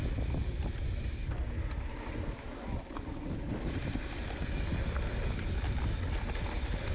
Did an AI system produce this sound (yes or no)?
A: no